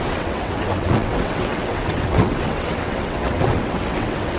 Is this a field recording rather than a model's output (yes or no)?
no